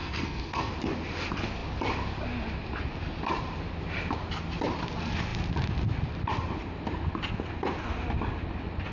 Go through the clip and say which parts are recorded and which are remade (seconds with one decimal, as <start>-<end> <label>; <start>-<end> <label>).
0.0-0.7 remade; 0.7-8.9 recorded